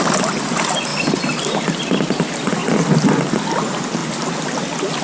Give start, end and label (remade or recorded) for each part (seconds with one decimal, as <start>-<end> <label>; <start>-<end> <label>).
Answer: 0.0-5.0 recorded